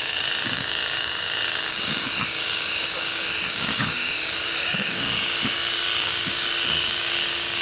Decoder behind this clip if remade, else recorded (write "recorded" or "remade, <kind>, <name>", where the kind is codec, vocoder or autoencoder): remade, codec, DAC